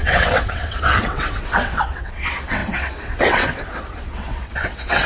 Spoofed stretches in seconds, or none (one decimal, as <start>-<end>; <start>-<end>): 0.0-5.1